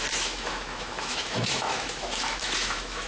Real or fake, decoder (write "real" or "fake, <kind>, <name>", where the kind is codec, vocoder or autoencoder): fake, autoencoder, DAC-VAE